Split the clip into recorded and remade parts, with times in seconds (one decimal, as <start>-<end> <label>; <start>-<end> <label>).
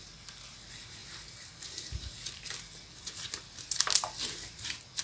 0.0-5.0 recorded